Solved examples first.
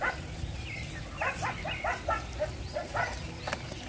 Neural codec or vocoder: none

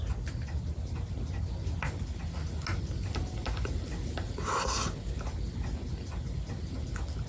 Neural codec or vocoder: none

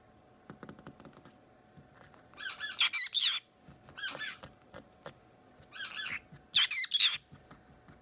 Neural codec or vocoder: none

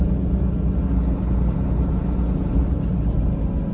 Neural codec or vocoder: none